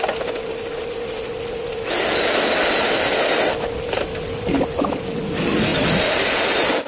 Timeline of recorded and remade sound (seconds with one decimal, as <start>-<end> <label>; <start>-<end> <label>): 0.0-6.9 recorded